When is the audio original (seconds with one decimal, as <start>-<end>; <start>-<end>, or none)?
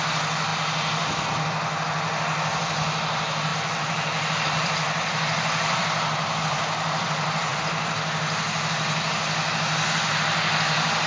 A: 0.0-3.5; 7.6-11.1